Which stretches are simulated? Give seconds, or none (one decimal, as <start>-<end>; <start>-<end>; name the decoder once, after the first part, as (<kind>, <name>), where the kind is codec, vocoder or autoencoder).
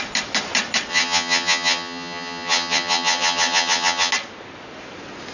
0.9-4.1 (vocoder, HiFi-GAN)